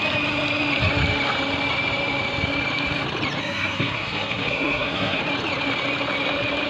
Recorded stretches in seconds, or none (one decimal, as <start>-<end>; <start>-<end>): 0.0-3.4; 5.2-6.7